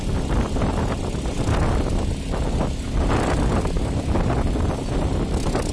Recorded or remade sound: recorded